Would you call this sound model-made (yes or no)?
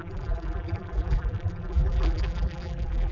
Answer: yes